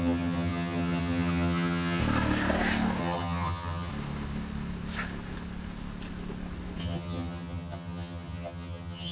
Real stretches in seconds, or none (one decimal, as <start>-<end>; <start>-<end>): 2.0-3.0; 3.9-6.8